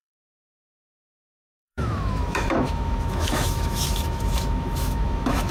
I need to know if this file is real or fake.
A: fake